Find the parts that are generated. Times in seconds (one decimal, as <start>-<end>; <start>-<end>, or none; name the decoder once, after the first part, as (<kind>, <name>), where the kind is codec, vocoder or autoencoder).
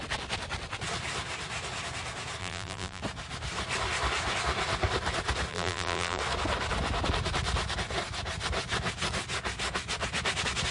2.4-3.0 (vocoder, BigVGAN v2); 5.5-6.2